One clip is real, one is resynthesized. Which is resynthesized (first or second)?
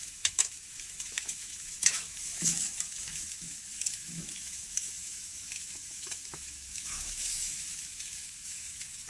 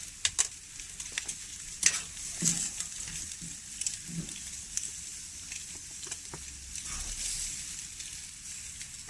first